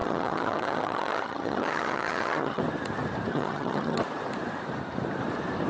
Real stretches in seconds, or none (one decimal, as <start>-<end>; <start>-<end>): 2.6-3.3; 4.0-5.7